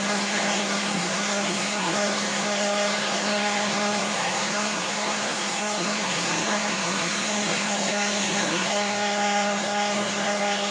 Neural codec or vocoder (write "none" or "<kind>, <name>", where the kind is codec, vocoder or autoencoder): codec, SNAC